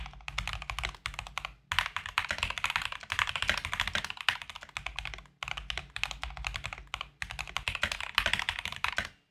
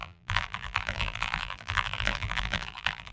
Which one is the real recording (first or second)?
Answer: first